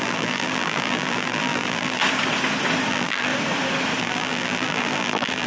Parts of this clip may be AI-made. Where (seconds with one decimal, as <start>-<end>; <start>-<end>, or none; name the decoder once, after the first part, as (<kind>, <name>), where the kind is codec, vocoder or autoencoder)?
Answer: 0.0-2.0 (vocoder, BigVGAN v2); 2.9-3.3; 4.0-5.5

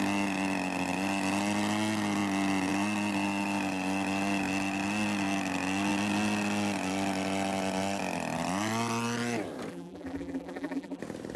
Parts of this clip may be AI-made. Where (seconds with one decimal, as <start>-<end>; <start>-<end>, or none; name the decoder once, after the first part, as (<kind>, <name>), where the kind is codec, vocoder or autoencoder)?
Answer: 9.7-11.0 (vocoder, BigVGAN v2)

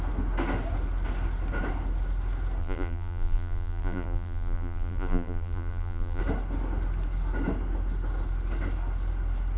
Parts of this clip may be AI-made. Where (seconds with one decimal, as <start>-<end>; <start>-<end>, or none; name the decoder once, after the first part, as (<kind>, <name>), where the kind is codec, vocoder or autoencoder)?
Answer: 2.6-6.2 (vocoder, BigVGAN v2)

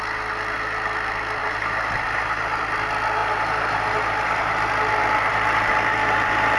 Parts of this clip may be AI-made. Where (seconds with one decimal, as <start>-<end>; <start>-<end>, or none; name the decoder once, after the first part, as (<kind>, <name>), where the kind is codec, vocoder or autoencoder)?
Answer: 1.4-2.6 (vocoder, BigVGAN v2); 3.2-4.7; 5.3-6.6

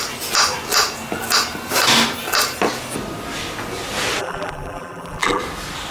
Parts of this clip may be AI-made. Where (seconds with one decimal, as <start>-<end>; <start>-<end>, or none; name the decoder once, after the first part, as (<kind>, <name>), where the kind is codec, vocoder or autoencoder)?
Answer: 4.2-5.4 (vocoder, BigVGAN v2)

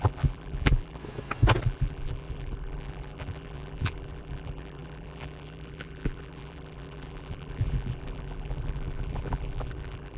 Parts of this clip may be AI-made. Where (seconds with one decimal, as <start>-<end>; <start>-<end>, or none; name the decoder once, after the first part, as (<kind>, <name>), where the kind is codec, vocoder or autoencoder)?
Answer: 0.0-1.0 (vocoder, BigVGAN v2); 1.6-10.2